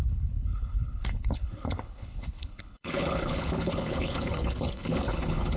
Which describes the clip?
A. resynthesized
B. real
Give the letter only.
A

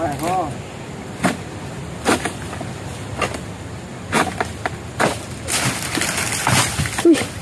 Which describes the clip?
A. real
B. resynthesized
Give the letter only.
A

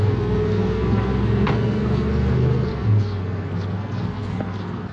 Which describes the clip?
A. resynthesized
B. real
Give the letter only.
A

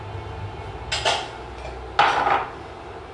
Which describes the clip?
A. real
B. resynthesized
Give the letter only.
A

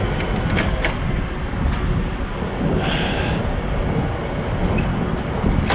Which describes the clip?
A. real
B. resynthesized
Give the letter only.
A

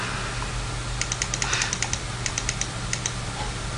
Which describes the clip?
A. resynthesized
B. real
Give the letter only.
B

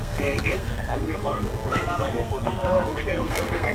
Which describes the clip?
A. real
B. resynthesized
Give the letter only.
B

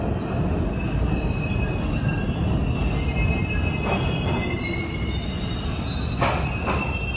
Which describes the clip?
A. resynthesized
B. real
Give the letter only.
B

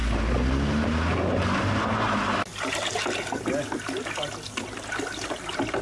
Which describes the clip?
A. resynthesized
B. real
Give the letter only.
B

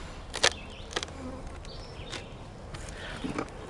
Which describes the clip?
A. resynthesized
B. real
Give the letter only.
B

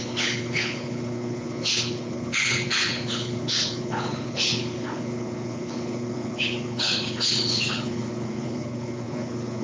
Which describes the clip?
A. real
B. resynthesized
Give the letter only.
B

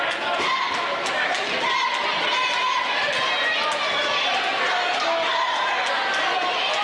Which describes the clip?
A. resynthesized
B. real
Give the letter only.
B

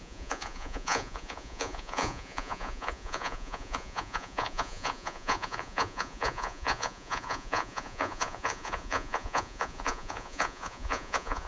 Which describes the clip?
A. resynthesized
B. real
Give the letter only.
A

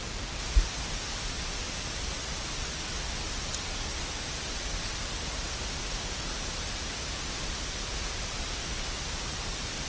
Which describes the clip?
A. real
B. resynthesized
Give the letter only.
A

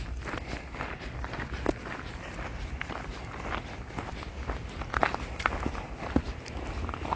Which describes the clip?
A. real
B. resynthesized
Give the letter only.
A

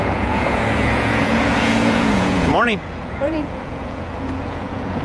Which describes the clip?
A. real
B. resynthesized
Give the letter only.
B